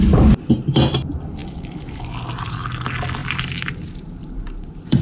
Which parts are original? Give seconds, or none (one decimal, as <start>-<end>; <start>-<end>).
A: 0.0-3.2